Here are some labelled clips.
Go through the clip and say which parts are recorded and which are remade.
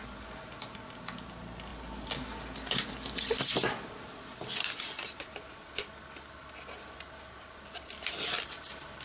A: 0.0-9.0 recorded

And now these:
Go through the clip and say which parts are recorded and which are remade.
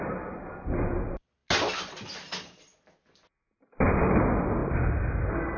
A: 0.0-5.6 recorded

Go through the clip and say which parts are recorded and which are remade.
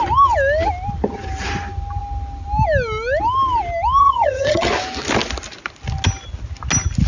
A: 0.0-4.0 recorded; 4.0-4.7 remade; 4.7-7.1 recorded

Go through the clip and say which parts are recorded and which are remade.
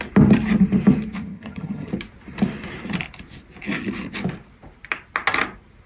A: 0.0-1.2 recorded; 1.2-1.9 remade; 1.9-5.9 recorded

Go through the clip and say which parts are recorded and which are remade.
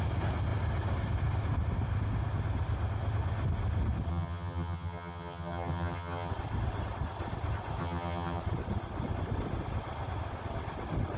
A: 0.0-4.1 recorded; 4.1-6.3 remade; 6.3-7.8 recorded; 7.8-8.4 remade; 8.4-11.2 recorded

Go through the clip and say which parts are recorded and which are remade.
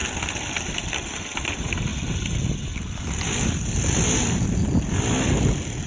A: 0.0-5.9 recorded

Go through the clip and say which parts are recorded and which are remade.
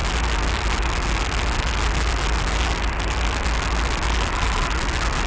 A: 0.0-5.3 recorded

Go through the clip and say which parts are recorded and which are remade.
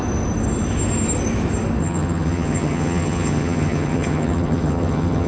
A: 0.0-1.8 recorded; 1.8-5.3 remade